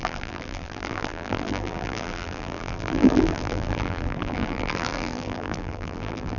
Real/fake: fake